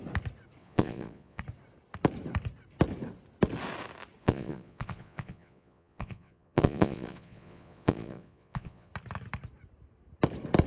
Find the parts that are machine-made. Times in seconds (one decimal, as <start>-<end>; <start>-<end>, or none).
0.6-1.4; 4.2-8.9